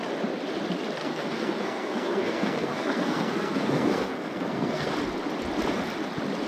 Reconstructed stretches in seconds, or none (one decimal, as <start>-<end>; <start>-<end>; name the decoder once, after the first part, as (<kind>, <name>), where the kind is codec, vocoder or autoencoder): 1.0-4.9 (codec, SNAC)